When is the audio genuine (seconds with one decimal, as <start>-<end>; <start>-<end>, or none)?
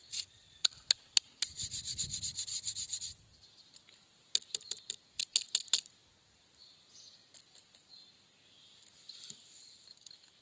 0.0-10.4